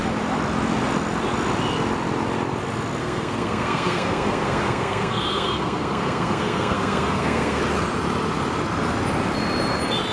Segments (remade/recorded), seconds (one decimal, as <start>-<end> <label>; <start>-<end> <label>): 0.0-3.0 recorded; 3.0-7.6 remade; 7.6-10.1 recorded